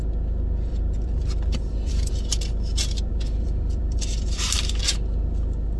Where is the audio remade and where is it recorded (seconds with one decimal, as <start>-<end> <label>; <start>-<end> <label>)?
0.0-0.7 recorded; 0.7-2.1 remade; 2.1-3.1 recorded; 3.1-4.8 remade; 4.8-5.8 recorded